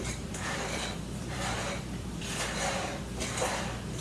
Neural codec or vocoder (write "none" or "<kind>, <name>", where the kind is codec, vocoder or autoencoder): vocoder, BigVGAN v2